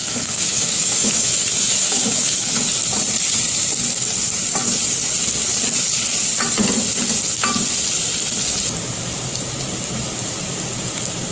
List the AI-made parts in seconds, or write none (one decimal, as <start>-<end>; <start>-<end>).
0.0-2.5